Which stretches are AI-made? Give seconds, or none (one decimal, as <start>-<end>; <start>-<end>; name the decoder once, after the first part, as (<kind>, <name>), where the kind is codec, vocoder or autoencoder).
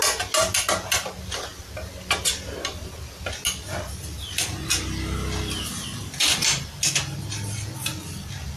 none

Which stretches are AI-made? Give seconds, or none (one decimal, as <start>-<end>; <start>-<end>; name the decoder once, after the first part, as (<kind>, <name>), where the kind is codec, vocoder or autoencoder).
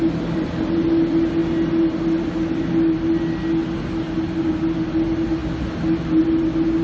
none